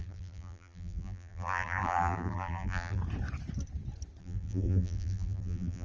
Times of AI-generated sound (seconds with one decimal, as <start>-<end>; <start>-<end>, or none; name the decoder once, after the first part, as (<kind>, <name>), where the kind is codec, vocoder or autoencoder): 0.0-3.0 (vocoder, BigVGAN v2); 4.2-5.8